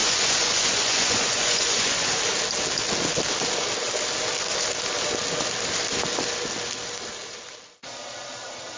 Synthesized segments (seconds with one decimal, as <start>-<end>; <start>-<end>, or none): 0.0-2.2